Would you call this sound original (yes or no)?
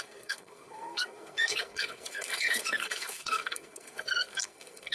no